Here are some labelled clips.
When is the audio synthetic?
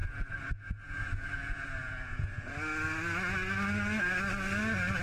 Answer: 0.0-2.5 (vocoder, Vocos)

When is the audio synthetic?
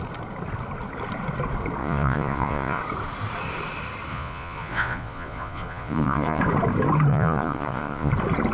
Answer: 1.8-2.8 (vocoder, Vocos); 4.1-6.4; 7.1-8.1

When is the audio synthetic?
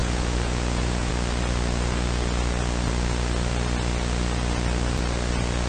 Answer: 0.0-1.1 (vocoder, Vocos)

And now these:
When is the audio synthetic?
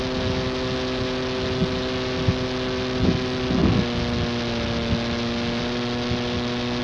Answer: none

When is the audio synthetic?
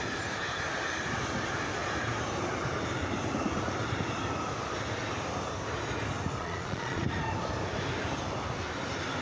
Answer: 6.4-7.0 (vocoder, Vocos)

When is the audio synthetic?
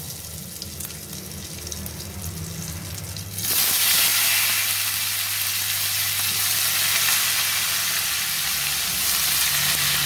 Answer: none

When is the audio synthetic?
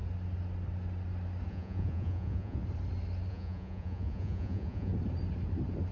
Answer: 1.5-2.6 (vocoder, Vocos); 3.3-4.9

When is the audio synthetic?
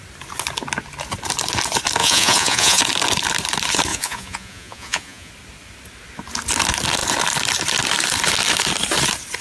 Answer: 2.0-2.8 (vocoder, Vocos); 3.9-5.3